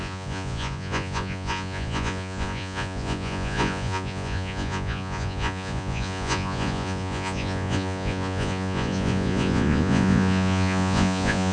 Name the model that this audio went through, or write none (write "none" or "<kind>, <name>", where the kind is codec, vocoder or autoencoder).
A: vocoder, Vocos